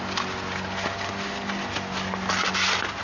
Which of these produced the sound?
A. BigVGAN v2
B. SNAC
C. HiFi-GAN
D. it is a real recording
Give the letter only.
D